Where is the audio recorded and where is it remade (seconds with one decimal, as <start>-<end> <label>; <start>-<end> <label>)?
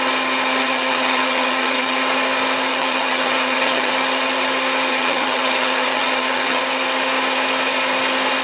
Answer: 0.0-0.6 recorded; 0.6-2.0 remade; 2.0-2.7 recorded; 2.7-3.9 remade; 3.9-4.9 recorded; 4.9-6.6 remade; 6.6-8.4 recorded